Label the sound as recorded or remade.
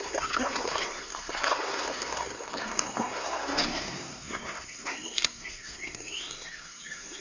remade